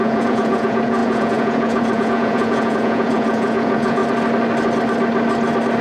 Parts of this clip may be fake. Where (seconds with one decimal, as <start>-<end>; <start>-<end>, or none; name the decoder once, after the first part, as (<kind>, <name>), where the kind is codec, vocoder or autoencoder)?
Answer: 0.0-4.0 (vocoder, Vocos)